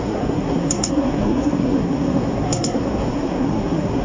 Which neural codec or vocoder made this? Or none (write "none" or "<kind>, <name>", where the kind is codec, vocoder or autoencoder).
codec, SNAC